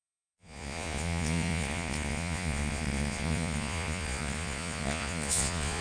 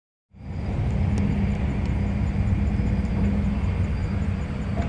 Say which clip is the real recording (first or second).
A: second